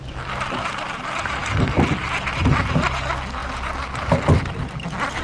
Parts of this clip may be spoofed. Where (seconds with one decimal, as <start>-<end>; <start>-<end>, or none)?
none